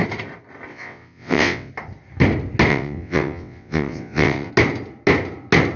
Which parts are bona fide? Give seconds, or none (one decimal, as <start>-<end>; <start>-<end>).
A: 0.0-0.7; 1.7-2.7; 4.5-5.8